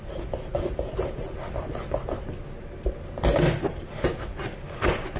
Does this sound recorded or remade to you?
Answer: recorded